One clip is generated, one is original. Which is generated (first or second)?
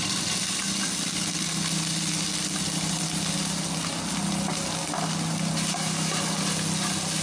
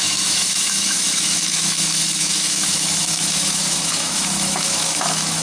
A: second